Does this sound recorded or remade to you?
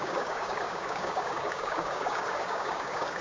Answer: remade